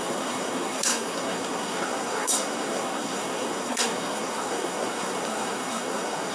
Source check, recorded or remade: remade